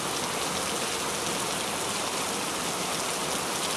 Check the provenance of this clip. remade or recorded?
recorded